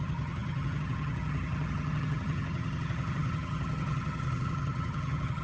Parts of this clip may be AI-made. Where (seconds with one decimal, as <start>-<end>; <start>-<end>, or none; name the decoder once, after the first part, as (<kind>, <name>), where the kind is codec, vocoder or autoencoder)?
0.0-5.4 (vocoder, HiFi-GAN)